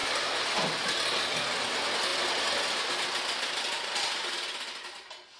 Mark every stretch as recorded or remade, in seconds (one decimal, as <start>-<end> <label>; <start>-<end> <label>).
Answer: 0.0-5.4 recorded